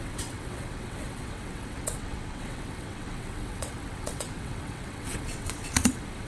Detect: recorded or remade remade